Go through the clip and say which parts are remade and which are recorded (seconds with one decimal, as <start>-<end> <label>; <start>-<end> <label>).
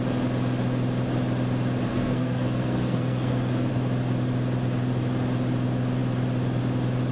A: 0.0-1.9 recorded; 1.9-3.7 remade; 3.7-7.1 recorded